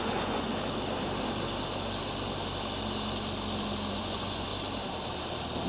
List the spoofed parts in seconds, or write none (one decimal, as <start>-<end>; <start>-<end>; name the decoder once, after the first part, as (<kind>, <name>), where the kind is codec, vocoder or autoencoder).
0.0-0.5 (vocoder, Vocos); 3.9-4.5